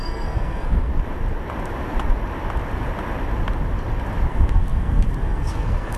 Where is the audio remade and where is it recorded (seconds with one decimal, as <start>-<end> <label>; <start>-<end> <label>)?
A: 0.0-0.9 remade; 0.9-4.3 recorded; 4.3-6.0 remade